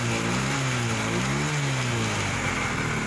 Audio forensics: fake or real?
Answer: real